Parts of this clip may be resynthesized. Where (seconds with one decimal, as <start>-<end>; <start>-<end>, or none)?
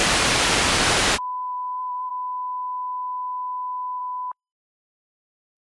0.0-2.1; 4.0-5.6